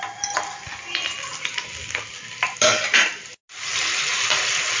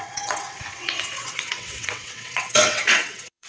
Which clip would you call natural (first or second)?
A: first